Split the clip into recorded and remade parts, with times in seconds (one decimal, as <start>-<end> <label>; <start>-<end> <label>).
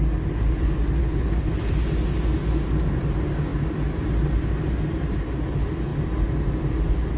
0.0-1.0 recorded; 1.0-1.5 remade; 1.5-7.2 recorded